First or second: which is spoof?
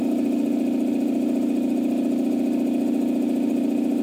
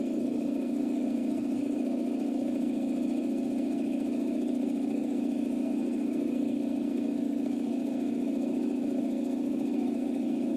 second